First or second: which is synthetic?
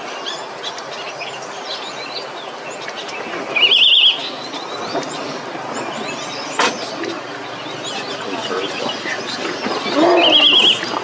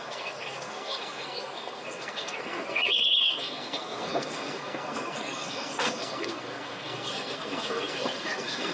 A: second